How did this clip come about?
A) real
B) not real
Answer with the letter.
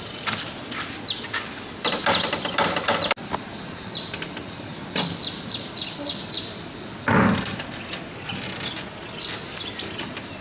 A